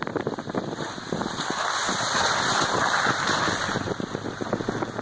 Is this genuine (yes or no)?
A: yes